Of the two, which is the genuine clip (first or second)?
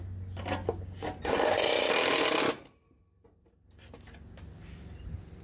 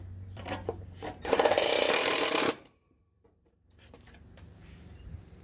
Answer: first